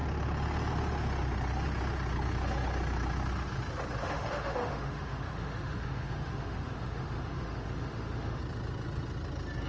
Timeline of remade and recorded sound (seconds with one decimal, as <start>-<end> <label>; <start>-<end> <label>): 0.0-4.0 recorded; 4.0-8.4 remade; 8.4-9.7 recorded